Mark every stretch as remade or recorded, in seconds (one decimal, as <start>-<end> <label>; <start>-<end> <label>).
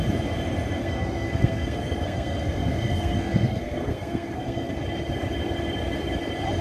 0.0-0.8 recorded; 0.8-4.8 remade; 4.8-6.6 recorded